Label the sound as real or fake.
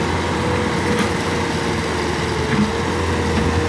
real